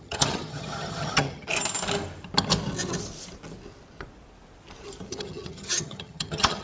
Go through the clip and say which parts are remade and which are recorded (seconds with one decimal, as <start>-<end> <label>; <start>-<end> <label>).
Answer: 0.0-1.5 remade; 1.5-5.1 recorded; 5.1-6.6 remade